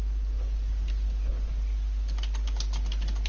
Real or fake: real